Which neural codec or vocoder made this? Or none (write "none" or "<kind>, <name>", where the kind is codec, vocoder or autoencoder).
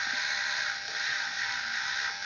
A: none